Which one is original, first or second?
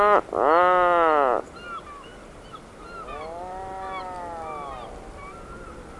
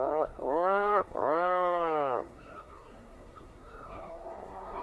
first